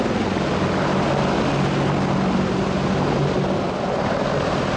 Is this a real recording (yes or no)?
yes